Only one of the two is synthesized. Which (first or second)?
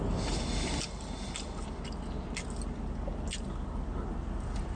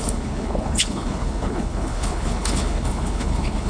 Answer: second